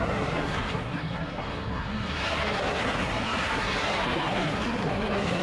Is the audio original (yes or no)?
no